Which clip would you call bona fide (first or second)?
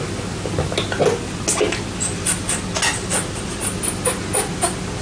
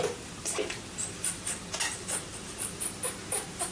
first